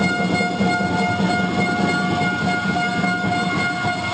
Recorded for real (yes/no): yes